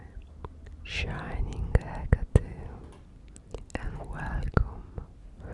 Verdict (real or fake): real